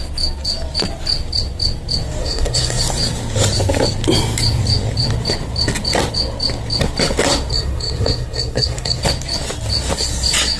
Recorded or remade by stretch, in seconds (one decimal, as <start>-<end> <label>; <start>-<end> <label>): 0.0-2.2 recorded; 2.2-2.8 remade; 2.8-7.5 recorded; 7.5-9.0 remade; 9.0-10.6 recorded

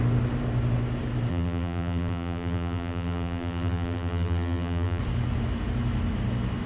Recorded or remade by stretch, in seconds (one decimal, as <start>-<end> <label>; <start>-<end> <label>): 0.0-1.3 recorded; 1.3-5.0 remade; 5.0-6.7 recorded

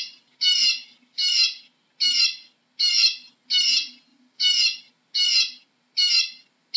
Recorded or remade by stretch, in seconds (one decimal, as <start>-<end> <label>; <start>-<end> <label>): 0.0-6.8 recorded

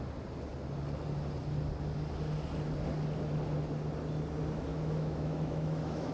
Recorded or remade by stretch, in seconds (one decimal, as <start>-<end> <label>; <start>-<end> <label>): 0.0-4.7 recorded; 4.7-6.1 remade